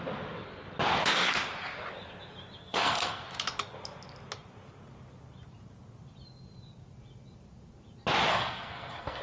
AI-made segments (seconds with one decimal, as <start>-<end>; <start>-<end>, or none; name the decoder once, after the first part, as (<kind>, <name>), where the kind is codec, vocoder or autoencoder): 2.6-3.2 (codec, SNAC); 8.3-9.2

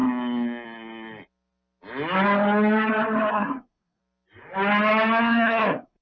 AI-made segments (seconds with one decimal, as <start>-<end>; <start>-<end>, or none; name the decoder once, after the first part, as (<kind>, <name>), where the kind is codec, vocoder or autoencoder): 3.3-4.0 (codec, SNAC); 5.2-6.0

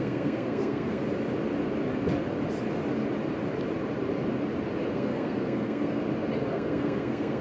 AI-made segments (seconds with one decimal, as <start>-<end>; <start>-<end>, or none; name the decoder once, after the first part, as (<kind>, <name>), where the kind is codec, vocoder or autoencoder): 0.0-1.0 (codec, SNAC); 4.9-6.0; 6.5-7.4

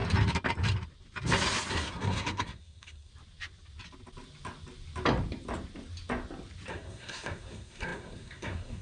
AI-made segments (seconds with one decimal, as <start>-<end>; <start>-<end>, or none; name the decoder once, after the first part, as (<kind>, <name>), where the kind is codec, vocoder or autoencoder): 1.7-3.1 (codec, SNAC); 6.7-8.8

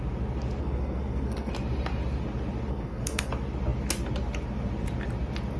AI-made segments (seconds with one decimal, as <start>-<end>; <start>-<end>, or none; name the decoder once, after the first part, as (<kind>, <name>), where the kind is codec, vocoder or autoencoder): 0.6-1.5 (codec, SNAC); 2.7-3.3

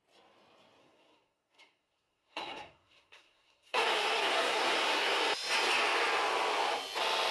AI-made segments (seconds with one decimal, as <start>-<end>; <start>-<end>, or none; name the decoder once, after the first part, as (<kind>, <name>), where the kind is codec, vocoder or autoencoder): 0.8-5.2 (codec, SNAC)

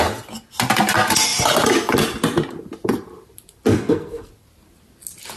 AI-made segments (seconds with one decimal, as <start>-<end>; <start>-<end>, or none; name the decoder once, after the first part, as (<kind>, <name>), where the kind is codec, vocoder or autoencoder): 3.7-4.3 (codec, SNAC)